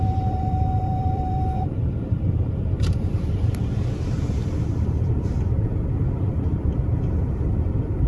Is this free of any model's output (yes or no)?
no